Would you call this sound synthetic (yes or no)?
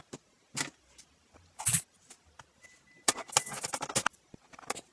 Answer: no